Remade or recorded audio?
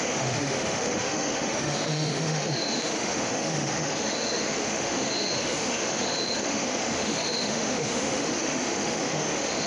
remade